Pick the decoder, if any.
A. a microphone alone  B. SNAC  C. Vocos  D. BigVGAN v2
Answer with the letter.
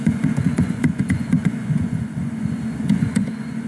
C